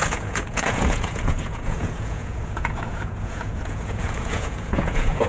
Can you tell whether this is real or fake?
fake